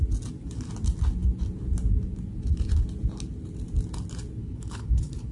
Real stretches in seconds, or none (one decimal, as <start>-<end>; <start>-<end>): 0.0-4.4